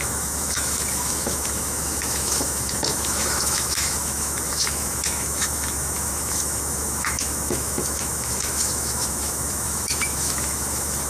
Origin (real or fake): fake